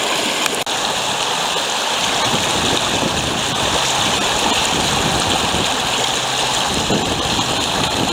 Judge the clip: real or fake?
real